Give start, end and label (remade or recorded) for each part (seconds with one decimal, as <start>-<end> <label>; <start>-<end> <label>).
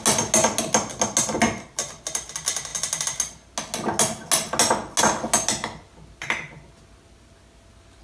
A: 0.0-8.0 recorded